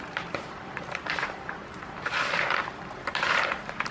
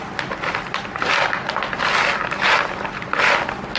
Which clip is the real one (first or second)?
second